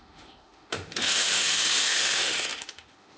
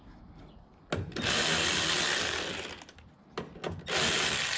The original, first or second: second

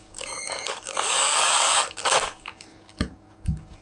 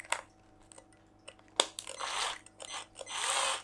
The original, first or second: second